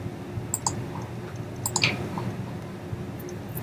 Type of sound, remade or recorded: recorded